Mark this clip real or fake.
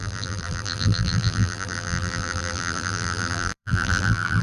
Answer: fake